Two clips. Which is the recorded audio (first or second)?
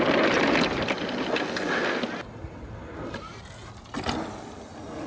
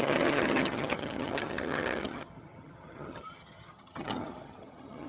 first